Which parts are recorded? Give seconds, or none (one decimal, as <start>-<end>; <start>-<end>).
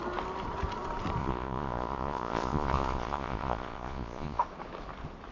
0.0-1.2; 4.4-5.3